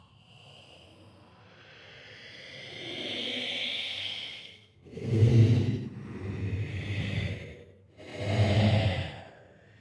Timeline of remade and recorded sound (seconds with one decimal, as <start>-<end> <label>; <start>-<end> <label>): 0.0-3.2 recorded; 3.2-5.3 remade; 5.3-6.7 recorded; 6.7-7.3 remade; 7.3-9.8 recorded